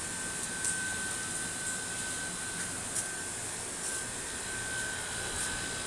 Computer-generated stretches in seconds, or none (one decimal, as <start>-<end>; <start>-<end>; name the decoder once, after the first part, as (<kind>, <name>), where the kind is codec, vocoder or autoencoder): 0.9-4.4 (vocoder, BigVGAN v2)

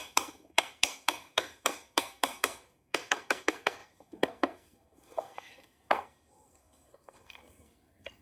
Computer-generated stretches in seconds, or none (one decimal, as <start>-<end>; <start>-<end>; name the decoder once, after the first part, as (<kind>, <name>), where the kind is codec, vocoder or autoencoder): 0.0-8.2 (codec, SNAC)

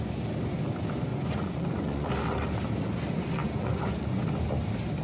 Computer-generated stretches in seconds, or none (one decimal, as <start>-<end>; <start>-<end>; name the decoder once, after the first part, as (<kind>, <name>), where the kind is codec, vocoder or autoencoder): 1.1-2.1 (vocoder, Vocos); 3.4-4.2

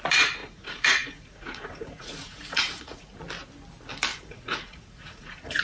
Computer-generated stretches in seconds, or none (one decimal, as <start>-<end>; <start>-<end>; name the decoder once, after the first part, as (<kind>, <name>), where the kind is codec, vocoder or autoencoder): 0.4-3.2 (vocoder, Vocos); 4.1-5.6

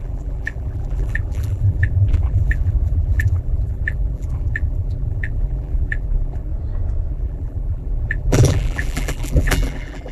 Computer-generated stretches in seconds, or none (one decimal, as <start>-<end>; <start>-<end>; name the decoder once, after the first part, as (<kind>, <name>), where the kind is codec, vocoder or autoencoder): 0.0-6.5 (vocoder, BigVGAN v2); 7.1-10.1